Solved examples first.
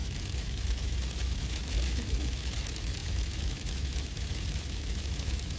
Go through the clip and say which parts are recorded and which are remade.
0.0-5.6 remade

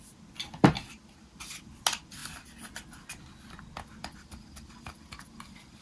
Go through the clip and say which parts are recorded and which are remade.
0.0-5.8 recorded

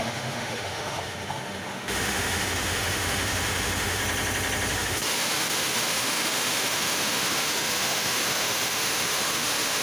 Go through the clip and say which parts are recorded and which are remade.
0.0-4.0 remade; 4.0-4.7 recorded; 4.7-9.8 remade